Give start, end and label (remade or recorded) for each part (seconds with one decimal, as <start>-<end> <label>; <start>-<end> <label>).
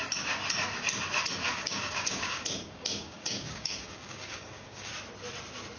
0.0-1.4 recorded; 1.4-4.9 remade; 4.9-5.8 recorded